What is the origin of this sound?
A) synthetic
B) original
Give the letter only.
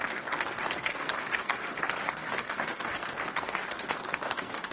A